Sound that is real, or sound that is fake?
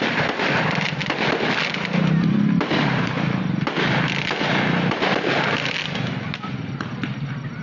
fake